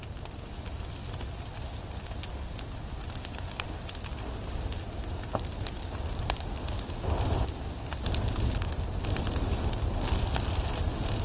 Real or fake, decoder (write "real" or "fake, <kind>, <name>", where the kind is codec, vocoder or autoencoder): real